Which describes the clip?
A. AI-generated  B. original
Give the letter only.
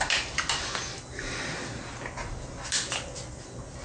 B